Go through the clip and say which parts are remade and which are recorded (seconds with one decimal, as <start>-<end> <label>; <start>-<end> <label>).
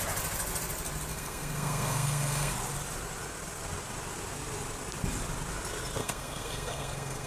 0.0-1.1 recorded; 1.1-2.5 remade; 2.5-6.0 recorded; 6.0-7.3 remade